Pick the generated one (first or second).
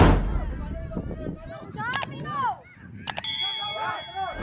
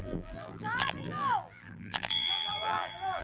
second